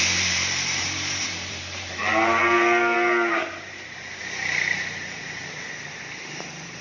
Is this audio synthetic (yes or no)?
yes